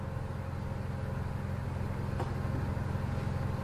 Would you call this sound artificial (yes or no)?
no